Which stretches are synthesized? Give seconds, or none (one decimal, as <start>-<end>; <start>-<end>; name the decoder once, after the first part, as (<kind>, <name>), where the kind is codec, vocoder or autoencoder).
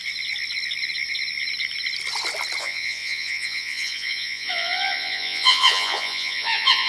2.6-6.9 (vocoder, Vocos)